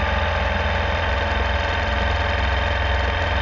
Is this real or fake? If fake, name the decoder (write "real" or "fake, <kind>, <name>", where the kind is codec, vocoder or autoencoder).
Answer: real